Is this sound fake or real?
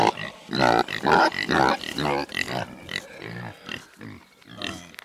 real